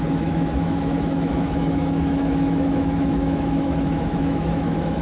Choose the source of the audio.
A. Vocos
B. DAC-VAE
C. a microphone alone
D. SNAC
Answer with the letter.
B